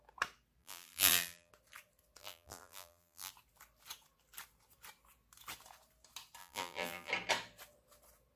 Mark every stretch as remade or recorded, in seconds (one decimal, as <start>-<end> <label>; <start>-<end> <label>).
0.0-0.6 recorded; 0.6-1.5 remade; 1.5-2.2 recorded; 2.2-3.3 remade; 3.3-6.4 recorded; 6.4-7.1 remade; 7.1-8.4 recorded

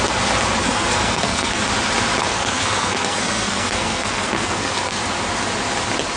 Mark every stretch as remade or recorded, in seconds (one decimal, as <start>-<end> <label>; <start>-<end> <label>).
0.0-0.6 recorded; 0.6-1.6 remade; 1.6-2.2 recorded; 2.2-5.0 remade; 5.0-6.2 recorded